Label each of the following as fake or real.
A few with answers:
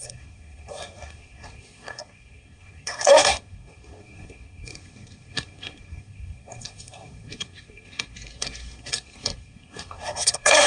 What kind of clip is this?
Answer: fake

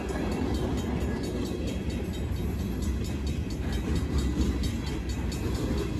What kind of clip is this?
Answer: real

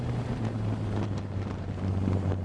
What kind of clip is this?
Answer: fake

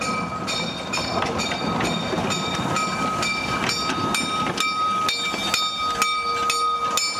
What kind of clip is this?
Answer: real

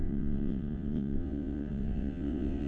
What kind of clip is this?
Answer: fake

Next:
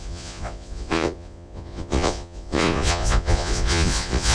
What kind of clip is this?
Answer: fake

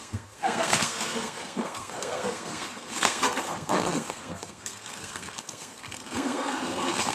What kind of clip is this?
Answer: fake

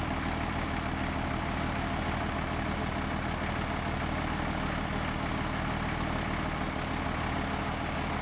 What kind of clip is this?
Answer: real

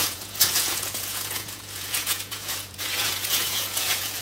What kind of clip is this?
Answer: fake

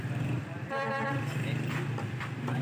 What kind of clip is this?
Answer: fake